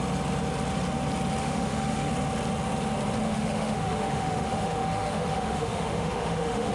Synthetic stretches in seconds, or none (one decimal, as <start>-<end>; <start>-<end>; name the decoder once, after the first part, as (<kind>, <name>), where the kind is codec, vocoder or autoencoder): 1.4-2.1 (autoencoder, DAC-VAE); 3.2-6.7